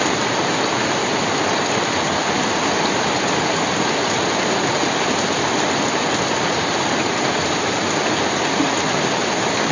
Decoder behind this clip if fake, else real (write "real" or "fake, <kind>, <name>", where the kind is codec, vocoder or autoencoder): real